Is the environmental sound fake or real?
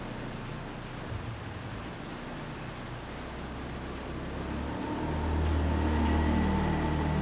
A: real